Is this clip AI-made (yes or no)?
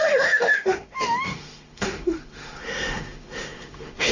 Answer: yes